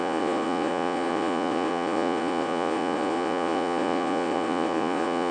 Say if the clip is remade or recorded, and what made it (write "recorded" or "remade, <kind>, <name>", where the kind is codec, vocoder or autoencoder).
remade, vocoder, Vocos